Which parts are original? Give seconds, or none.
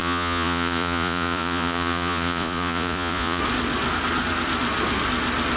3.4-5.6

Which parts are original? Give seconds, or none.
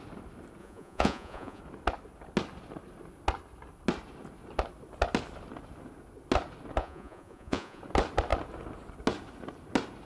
0.0-0.6; 1.6-6.8; 7.8-10.1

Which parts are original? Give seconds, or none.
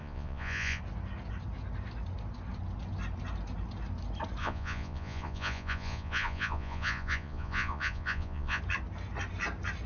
0.8-4.4; 8.6-9.9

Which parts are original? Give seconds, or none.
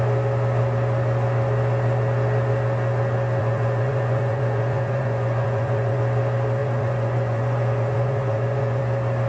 0.0-3.4; 6.0-6.6; 8.8-9.3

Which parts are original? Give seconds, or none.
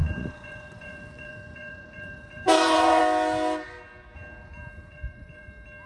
3.0-4.9; 5.5-5.9